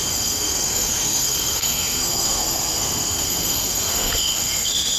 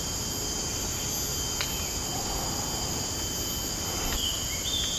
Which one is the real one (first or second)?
second